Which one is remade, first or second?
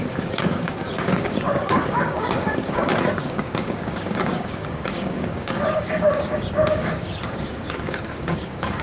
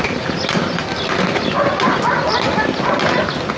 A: first